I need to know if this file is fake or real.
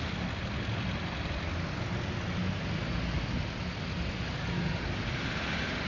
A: real